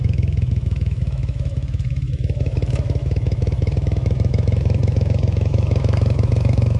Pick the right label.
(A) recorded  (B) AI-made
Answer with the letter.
B